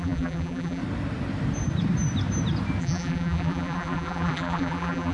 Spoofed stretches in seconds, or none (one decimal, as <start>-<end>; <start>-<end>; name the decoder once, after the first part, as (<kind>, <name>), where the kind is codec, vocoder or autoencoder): 0.0-0.8 (vocoder, BigVGAN v2); 2.8-5.1